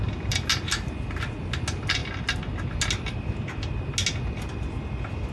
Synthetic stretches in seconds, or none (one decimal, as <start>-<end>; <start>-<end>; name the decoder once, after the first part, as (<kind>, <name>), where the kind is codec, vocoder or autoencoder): none